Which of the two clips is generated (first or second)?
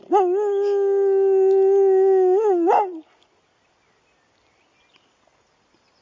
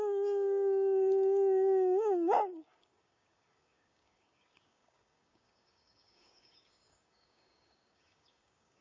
second